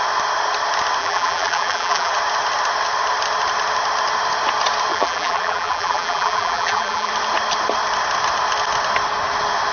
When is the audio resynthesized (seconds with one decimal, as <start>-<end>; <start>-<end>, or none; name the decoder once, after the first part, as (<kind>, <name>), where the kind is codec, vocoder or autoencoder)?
1.0-2.1 (vocoder, BigVGAN v2); 4.9-7.1